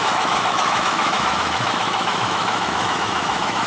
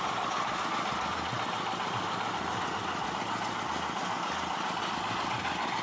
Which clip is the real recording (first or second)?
second